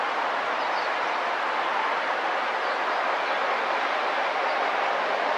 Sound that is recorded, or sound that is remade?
recorded